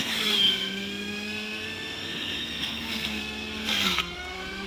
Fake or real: fake